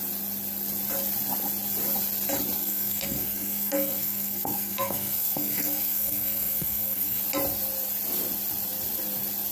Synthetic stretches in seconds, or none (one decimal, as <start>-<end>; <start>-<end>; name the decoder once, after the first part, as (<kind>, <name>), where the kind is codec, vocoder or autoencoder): 2.6-7.2 (codec, SNAC)